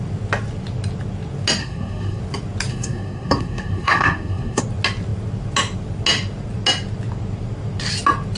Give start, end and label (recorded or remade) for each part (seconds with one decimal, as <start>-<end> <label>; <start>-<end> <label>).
0.0-1.6 recorded; 1.6-2.2 remade; 2.2-2.7 recorded; 2.7-4.6 remade; 4.6-8.4 recorded